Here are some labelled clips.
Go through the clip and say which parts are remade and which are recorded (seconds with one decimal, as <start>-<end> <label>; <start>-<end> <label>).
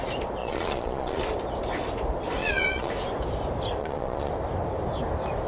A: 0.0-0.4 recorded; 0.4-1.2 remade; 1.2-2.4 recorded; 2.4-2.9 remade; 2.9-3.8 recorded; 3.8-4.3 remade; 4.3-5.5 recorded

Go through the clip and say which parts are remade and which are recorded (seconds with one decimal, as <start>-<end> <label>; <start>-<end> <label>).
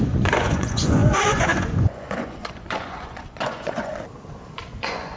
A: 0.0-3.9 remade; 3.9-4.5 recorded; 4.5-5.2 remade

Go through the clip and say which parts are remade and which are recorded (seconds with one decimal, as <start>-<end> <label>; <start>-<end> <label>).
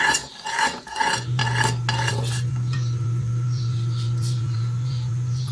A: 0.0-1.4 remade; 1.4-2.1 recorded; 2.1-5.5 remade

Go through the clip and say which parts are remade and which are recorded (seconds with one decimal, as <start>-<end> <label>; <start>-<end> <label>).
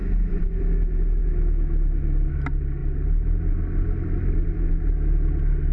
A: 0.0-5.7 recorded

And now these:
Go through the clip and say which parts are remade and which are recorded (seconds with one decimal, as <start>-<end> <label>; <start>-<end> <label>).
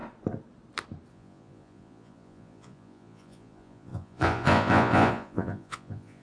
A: 0.0-1.1 recorded; 1.1-6.2 remade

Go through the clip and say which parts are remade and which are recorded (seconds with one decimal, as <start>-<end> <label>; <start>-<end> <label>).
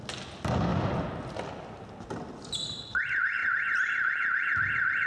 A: 0.0-5.1 recorded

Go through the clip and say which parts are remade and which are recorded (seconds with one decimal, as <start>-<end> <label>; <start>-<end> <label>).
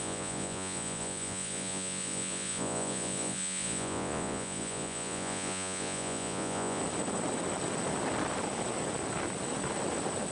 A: 0.0-6.8 remade; 6.8-10.3 recorded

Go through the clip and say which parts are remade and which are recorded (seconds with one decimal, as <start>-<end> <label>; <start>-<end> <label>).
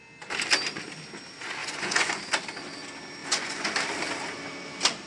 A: 0.0-1.6 recorded; 1.6-2.2 remade; 2.2-3.2 recorded; 3.2-3.7 remade; 3.7-5.1 recorded